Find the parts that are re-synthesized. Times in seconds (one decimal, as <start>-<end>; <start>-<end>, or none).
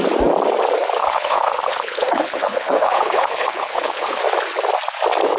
1.0-4.2